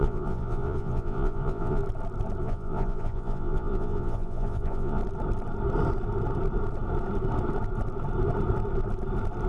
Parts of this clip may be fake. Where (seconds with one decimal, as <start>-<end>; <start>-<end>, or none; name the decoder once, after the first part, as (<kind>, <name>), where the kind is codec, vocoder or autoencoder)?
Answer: 0.0-1.8 (vocoder, Vocos); 2.4-5.0